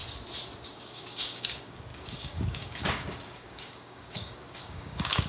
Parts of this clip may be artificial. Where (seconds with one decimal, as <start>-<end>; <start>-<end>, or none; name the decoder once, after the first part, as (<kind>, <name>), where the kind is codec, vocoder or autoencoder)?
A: 0.7-5.3 (codec, DAC)